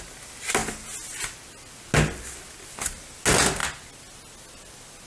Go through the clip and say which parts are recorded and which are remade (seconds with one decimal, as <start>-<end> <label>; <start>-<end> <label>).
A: 0.0-5.1 recorded